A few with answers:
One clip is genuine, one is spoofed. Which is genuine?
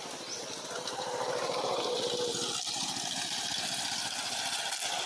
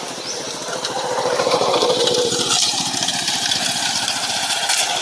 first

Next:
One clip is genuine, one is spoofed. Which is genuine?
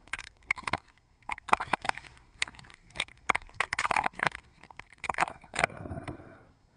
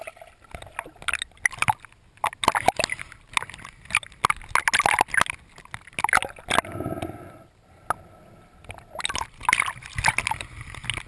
second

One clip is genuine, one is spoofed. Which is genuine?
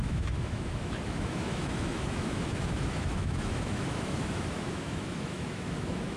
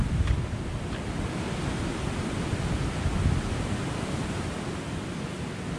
second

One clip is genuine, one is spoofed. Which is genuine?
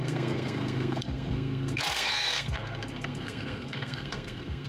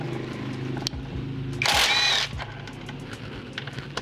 second